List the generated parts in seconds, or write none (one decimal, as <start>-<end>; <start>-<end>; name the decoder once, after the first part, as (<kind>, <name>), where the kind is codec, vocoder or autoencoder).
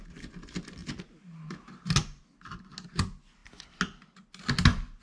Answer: none